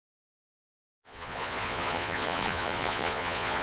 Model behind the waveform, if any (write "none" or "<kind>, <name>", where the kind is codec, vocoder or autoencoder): vocoder, Vocos